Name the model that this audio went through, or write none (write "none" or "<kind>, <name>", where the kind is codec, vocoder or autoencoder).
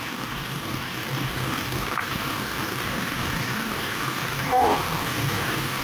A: codec, DAC